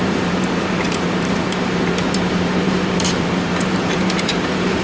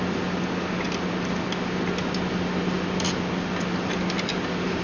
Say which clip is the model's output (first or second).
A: first